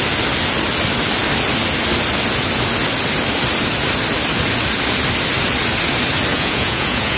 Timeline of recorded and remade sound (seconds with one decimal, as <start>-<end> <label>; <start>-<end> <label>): 0.0-6.3 recorded; 6.3-7.2 remade